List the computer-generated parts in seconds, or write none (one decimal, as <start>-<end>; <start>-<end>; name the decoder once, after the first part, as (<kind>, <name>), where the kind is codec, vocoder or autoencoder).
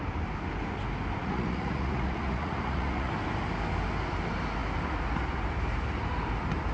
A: 1.2-3.1 (vocoder, Vocos)